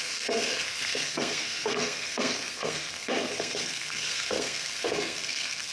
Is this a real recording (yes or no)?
no